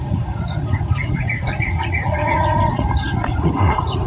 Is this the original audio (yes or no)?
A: no